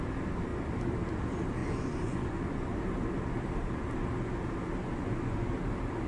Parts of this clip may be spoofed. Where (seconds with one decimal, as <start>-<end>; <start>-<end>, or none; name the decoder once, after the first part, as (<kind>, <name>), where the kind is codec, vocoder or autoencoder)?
1.6-2.7 (vocoder, Vocos); 4.8-5.5